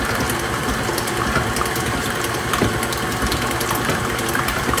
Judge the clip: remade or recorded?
remade